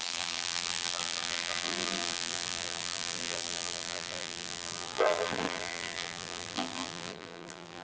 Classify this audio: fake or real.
fake